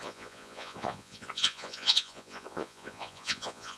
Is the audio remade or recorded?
remade